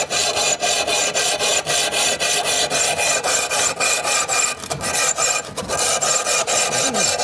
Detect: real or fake real